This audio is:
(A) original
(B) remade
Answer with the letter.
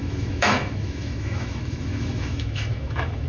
B